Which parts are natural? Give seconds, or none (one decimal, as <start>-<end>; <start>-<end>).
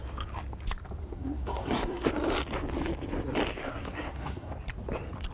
0.0-1.0; 2.1-3.6; 4.5-5.3